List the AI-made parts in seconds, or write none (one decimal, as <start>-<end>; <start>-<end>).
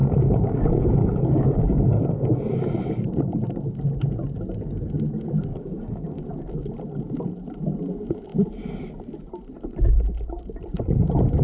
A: 0.0-2.8; 5.5-6.2